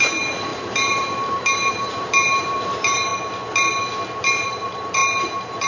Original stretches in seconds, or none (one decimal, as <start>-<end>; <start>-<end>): 3.1-4.2